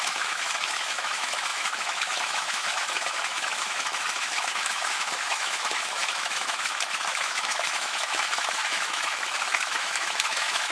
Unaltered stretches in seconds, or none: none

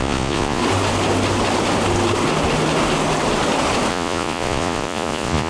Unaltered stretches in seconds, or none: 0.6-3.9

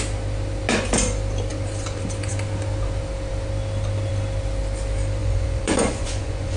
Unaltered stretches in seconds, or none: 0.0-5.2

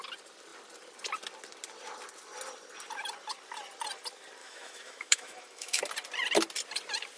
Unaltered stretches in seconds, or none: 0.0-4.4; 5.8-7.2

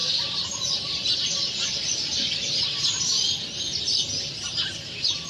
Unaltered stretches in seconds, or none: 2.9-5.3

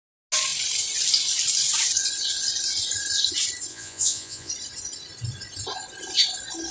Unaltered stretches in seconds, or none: 0.0-3.7; 4.5-6.7

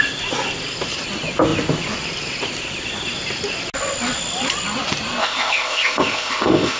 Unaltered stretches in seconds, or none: 0.0-5.2

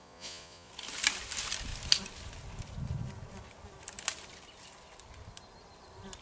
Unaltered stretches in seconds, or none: 0.7-6.2